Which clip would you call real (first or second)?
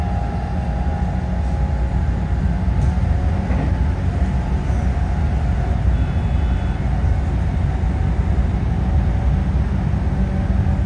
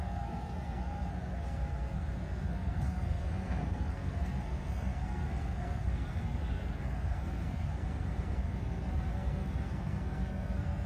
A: first